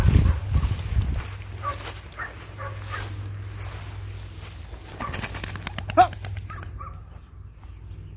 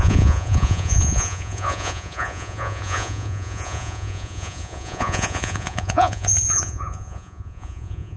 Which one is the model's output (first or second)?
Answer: second